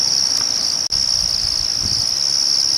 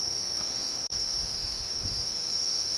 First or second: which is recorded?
first